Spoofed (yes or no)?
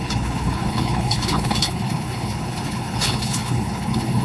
yes